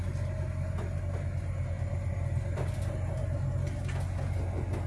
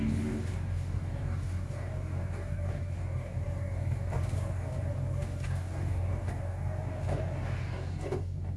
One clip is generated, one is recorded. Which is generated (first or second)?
second